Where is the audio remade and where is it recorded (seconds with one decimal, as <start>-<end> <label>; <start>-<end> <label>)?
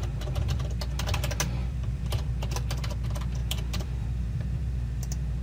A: 0.0-0.6 remade; 0.6-1.6 recorded; 1.6-2.3 remade; 2.3-3.4 recorded; 3.4-5.4 remade